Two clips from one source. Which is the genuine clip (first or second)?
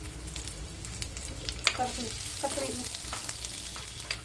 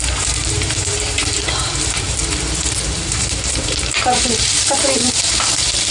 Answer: first